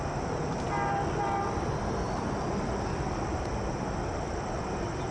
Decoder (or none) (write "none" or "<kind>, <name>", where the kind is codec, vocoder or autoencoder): none